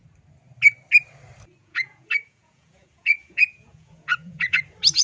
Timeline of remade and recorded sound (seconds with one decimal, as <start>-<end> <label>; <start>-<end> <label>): 0.0-1.6 recorded; 1.6-4.6 remade; 4.6-5.0 recorded